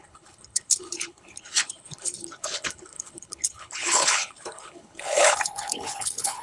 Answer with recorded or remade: remade